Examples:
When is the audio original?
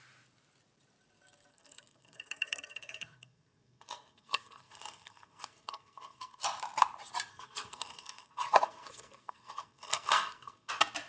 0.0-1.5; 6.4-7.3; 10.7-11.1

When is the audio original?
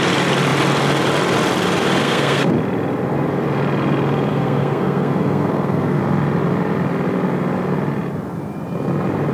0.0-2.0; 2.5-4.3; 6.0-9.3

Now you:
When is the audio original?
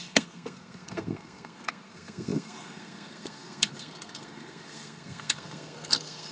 none